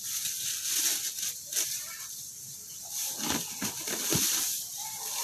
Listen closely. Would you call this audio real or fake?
real